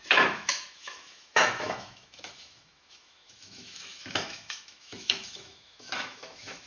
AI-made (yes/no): yes